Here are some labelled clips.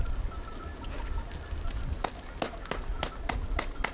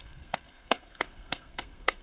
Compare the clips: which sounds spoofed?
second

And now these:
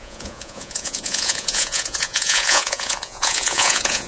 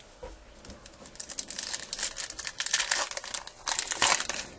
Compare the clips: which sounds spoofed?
first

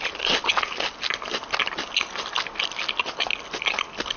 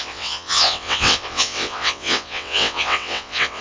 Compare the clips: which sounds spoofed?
second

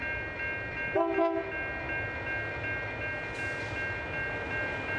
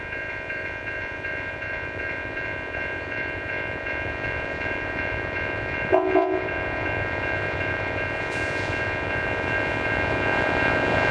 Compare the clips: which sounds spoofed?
second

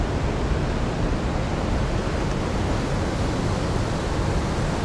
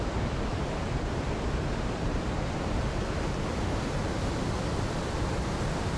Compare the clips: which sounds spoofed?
second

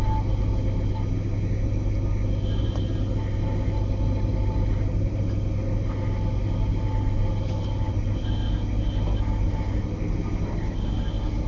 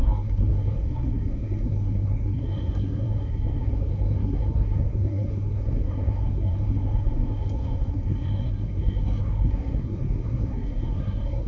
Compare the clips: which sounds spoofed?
second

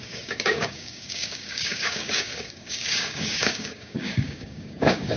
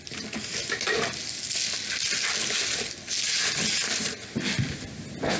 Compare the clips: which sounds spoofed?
first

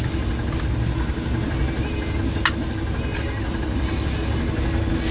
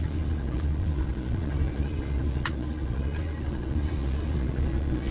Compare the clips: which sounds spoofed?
second